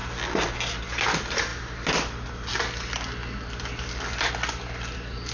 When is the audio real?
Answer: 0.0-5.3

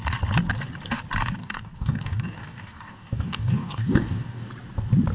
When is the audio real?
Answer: 0.0-1.4; 4.5-5.1

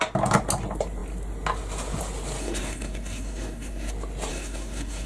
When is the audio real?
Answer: 0.0-2.4; 3.9-4.3

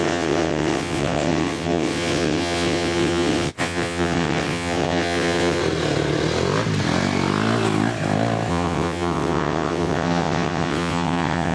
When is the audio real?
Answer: 5.6-8.5

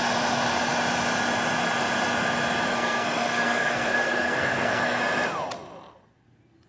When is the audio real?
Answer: 0.0-2.7; 5.0-6.7

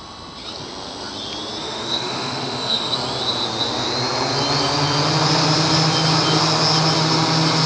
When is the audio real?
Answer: 0.0-1.6; 2.9-7.7